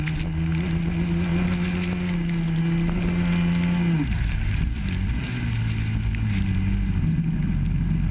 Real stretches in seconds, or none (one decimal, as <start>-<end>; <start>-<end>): 0.0-8.1